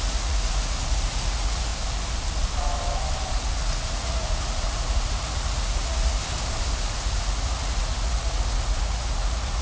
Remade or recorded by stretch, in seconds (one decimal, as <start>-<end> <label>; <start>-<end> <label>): 0.0-1.7 remade; 1.7-3.6 recorded; 3.6-6.2 remade; 6.2-6.7 recorded; 6.7-9.6 remade